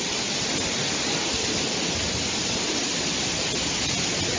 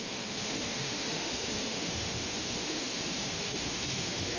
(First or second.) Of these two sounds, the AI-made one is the second